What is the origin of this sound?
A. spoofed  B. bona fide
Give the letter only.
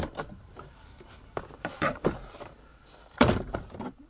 A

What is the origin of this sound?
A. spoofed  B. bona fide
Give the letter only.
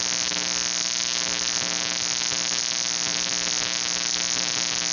B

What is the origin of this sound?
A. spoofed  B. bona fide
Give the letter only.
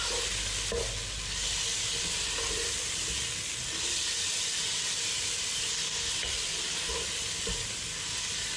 B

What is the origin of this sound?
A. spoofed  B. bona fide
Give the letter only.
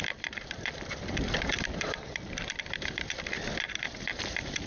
A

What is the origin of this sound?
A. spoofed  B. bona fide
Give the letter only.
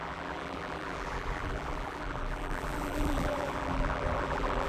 A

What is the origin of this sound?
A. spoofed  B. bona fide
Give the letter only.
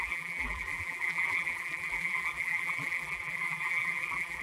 A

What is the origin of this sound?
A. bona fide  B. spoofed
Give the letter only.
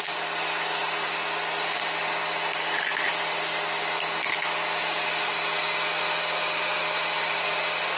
A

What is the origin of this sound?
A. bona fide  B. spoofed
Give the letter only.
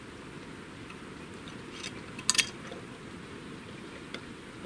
A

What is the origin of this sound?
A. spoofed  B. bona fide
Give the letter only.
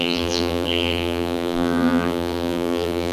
A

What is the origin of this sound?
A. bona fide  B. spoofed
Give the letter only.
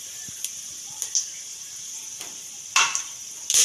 B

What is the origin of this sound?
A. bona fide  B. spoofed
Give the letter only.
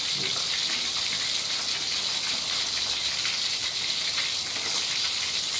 A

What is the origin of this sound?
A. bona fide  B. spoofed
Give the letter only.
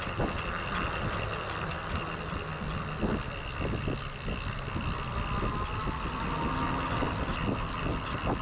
A